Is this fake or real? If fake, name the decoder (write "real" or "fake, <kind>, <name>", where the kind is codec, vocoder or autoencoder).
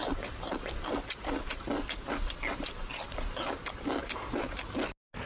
real